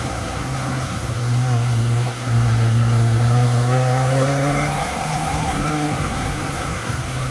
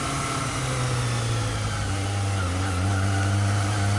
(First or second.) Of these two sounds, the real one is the second